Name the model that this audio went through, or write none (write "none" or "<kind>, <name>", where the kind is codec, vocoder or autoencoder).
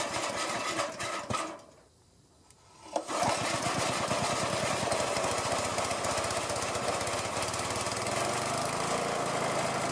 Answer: none